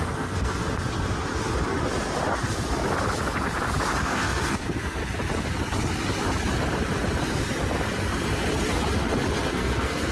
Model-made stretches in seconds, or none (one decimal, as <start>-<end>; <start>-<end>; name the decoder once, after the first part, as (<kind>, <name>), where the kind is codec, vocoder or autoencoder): 0.0-0.6 (codec, SNAC); 4.0-5.0; 9.5-10.1